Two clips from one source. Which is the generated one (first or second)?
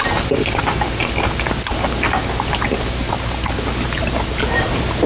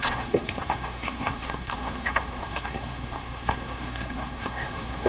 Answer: second